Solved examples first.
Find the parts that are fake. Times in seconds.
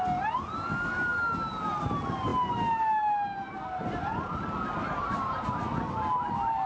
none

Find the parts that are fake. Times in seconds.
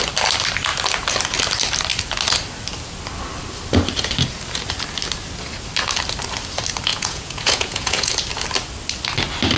6.9-8.1 (vocoder, Vocos)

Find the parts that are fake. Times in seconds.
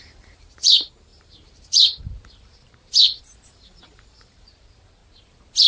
0.0-5.0 (vocoder, BigVGAN v2)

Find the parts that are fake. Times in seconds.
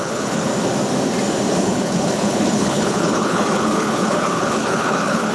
0.0-0.5 (codec, HILCodec); 1.5-5.3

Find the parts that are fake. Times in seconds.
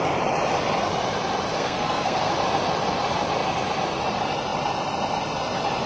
1.5-2.3 (codec, SNAC)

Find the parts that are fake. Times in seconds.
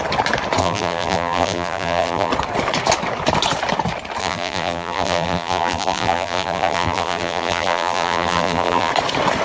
0.6-2.3 (vocoder, BigVGAN v2); 4.2-8.9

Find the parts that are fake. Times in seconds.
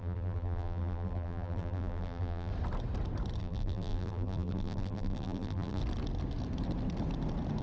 0.0-2.5 (vocoder, BigVGAN v2); 3.4-5.8